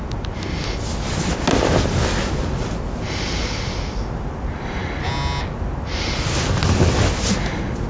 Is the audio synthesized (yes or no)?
no